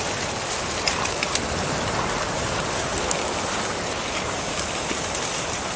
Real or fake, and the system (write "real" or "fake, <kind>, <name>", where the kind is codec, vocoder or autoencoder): real